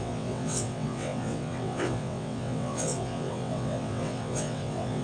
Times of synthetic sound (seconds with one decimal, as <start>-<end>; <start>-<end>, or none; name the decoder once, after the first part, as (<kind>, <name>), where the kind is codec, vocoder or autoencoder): 0.0-5.0 (vocoder, WaveNeXt)